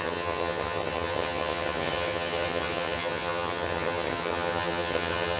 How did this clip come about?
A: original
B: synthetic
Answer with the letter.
B